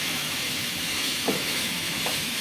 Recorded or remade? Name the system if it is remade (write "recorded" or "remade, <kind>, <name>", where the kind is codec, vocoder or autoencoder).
remade, autoencoder, DAC-VAE